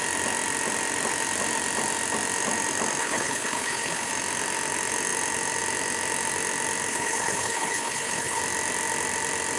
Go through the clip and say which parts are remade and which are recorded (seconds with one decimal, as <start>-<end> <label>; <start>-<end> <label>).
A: 0.0-3.0 recorded; 3.0-4.1 remade; 4.1-6.9 recorded; 6.9-8.4 remade; 8.4-9.6 recorded